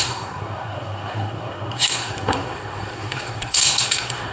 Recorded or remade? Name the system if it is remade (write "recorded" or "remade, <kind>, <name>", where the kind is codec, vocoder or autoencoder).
remade, codec, SNAC